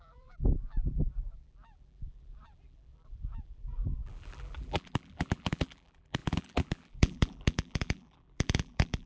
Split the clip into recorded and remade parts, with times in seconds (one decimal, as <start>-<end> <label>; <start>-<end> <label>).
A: 0.0-9.1 remade